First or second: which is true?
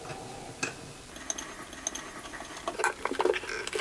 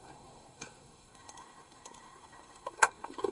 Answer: first